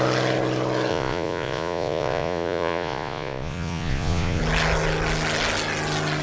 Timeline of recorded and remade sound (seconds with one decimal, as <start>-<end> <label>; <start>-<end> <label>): 0.0-0.9 recorded; 0.9-4.4 remade; 4.4-6.2 recorded